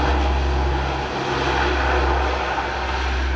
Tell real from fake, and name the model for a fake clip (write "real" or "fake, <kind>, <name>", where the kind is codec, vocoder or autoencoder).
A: real